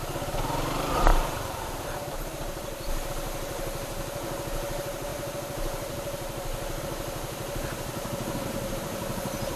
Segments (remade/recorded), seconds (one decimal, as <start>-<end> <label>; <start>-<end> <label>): 0.0-1.1 recorded; 1.1-3.1 remade; 3.1-9.6 recorded